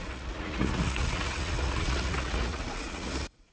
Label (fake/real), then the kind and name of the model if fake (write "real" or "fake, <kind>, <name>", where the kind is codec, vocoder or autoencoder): fake, vocoder, Vocos